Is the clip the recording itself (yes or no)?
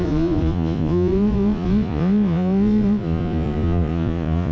no